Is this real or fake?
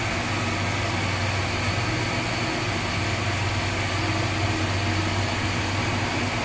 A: real